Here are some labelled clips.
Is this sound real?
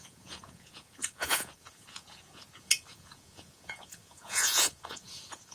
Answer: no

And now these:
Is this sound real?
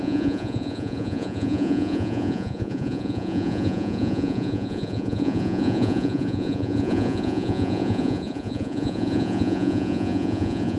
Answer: no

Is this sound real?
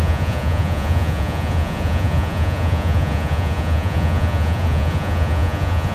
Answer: no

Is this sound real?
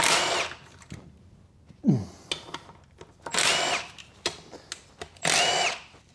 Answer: yes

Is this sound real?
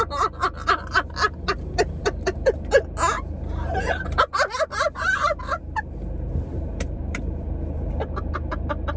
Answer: yes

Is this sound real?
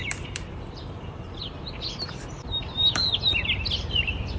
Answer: no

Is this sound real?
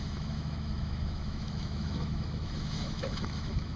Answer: no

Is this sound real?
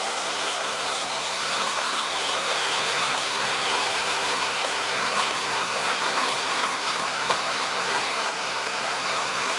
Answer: no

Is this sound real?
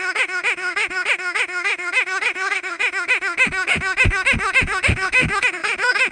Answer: no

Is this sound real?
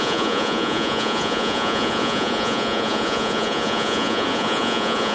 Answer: no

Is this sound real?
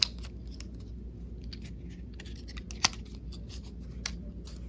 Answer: yes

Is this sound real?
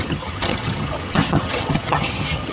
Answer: no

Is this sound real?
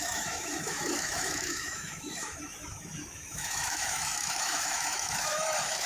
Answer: no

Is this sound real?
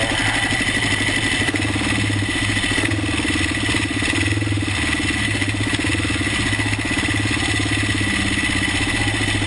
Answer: yes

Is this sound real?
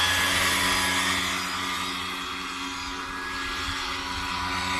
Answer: yes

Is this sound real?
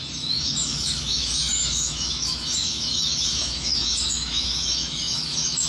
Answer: no